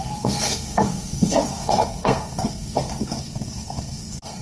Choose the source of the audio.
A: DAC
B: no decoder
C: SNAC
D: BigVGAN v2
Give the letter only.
C